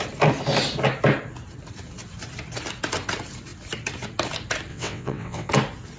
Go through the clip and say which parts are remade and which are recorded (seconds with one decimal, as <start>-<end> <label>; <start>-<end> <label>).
0.0-4.7 recorded; 4.7-5.5 remade; 5.5-6.0 recorded